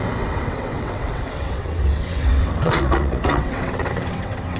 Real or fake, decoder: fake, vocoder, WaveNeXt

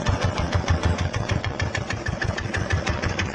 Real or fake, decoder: fake, vocoder, WaveNeXt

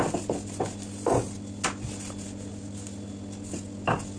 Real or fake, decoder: real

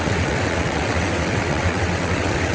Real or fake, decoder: fake, vocoder, WaveNeXt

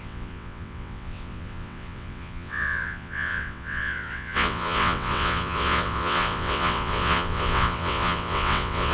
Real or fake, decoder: fake, vocoder, WaveNeXt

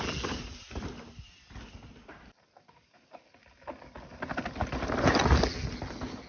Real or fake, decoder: real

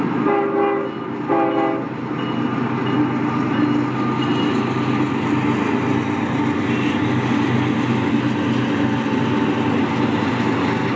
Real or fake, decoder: real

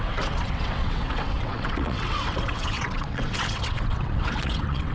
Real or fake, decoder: fake, vocoder, WaveNeXt